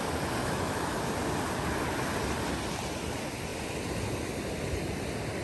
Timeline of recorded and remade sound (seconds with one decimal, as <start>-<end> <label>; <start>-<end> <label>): 0.0-0.4 recorded; 0.4-1.0 remade; 1.0-5.4 recorded